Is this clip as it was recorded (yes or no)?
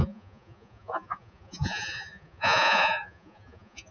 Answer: no